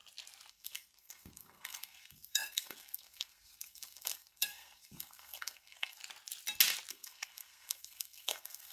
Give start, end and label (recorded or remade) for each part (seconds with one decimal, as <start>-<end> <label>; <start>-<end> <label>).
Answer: 0.0-0.5 recorded; 0.5-6.0 remade; 6.0-6.9 recorded; 6.9-8.7 remade